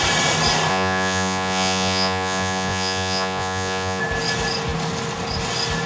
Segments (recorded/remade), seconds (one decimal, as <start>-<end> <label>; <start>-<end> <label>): 0.0-0.7 recorded; 0.7-4.0 remade; 4.0-5.9 recorded